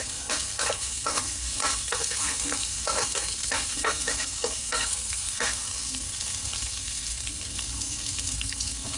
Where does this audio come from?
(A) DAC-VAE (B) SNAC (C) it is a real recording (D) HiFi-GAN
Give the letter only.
B